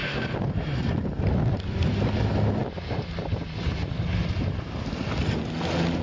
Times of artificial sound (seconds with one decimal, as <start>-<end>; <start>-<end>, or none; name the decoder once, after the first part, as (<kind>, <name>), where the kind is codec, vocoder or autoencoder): 2.6-3.9 (vocoder, BigVGAN v2)